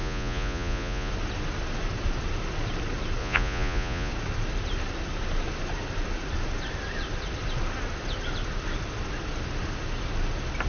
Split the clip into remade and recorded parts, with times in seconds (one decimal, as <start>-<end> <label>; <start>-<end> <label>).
0.0-1.1 remade; 1.1-3.2 recorded; 3.2-4.1 remade; 4.1-10.7 recorded